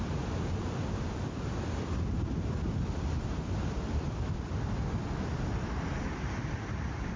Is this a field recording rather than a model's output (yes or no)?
yes